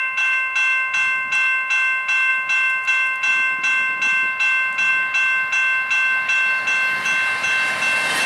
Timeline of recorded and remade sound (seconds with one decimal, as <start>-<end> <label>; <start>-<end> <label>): 0.0-8.3 recorded